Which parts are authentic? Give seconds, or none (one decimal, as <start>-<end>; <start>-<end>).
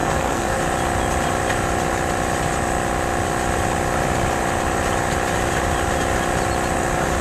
0.6-7.2